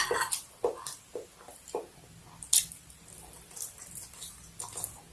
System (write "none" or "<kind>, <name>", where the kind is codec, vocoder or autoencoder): none